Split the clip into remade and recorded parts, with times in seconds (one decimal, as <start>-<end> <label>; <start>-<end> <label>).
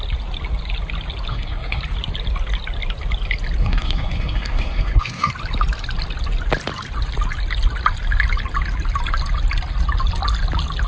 0.0-1.3 recorded; 1.3-1.8 remade; 1.8-3.6 recorded; 3.6-5.3 remade; 5.3-10.9 recorded